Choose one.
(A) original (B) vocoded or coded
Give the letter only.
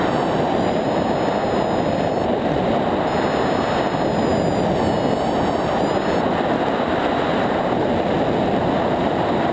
A